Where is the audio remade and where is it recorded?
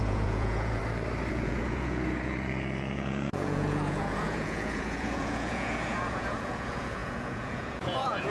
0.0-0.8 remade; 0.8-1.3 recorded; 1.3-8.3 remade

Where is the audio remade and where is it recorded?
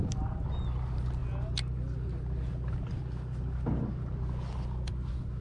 0.0-5.4 recorded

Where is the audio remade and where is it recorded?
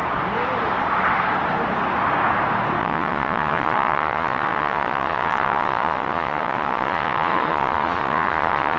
0.0-2.8 recorded; 2.8-8.8 remade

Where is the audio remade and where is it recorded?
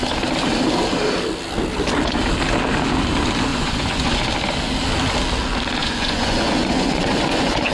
0.0-3.5 recorded; 3.5-4.2 remade; 4.2-5.8 recorded; 5.8-7.7 remade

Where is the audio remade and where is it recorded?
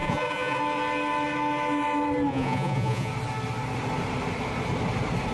0.0-0.6 remade; 0.6-2.3 recorded; 2.3-3.1 remade; 3.1-5.3 recorded